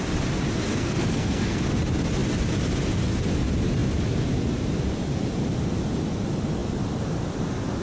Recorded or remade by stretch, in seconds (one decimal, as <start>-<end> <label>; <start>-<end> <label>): 0.0-0.7 recorded; 0.7-1.6 remade; 1.6-7.8 recorded